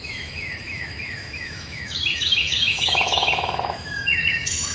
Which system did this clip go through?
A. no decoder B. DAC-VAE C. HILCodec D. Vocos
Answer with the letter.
B